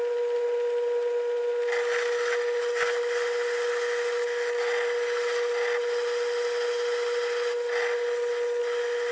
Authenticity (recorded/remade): recorded